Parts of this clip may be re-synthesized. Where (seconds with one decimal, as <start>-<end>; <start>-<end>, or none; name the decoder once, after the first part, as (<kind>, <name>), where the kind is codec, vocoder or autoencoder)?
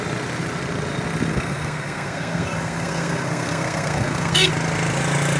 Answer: 1.3-4.5 (codec, SNAC)